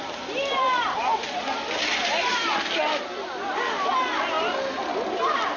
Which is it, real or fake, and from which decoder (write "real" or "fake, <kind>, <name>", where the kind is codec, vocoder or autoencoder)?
real